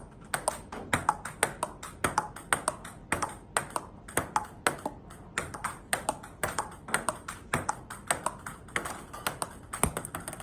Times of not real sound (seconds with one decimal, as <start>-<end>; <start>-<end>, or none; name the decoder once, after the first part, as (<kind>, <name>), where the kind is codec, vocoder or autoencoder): 5.6-7.7 (vocoder, BigVGAN v2)